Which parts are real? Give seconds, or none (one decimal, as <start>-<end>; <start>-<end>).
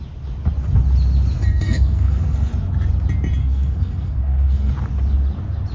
0.0-1.4; 2.5-3.4; 4.7-5.7